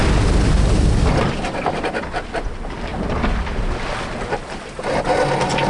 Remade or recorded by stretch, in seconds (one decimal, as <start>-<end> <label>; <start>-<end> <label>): 0.0-5.7 recorded

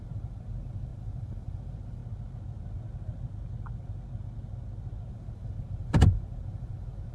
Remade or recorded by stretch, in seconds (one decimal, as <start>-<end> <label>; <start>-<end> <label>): 0.0-2.0 remade; 2.0-5.1 recorded; 5.1-7.1 remade

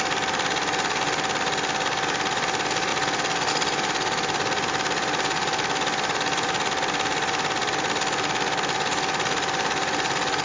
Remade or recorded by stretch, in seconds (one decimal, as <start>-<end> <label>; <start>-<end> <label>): 0.0-2.9 recorded; 2.9-3.5 remade; 3.5-10.4 recorded